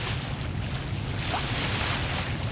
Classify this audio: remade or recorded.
recorded